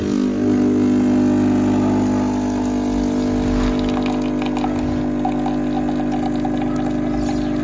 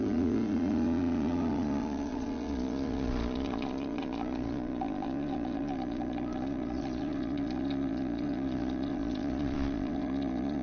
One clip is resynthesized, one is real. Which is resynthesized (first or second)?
second